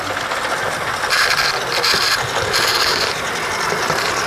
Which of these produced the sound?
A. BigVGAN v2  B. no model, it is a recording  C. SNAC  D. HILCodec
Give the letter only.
B